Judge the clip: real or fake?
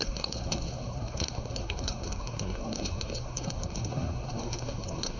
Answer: fake